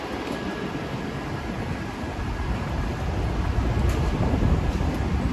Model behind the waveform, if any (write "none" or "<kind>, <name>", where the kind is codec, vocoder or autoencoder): none